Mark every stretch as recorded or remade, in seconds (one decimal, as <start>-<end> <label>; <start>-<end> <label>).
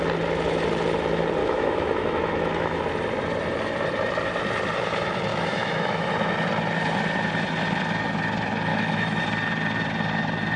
0.0-1.4 recorded; 1.4-2.8 remade; 2.8-5.3 recorded; 5.3-6.1 remade; 6.1-8.7 recorded; 8.7-9.2 remade; 9.2-10.6 recorded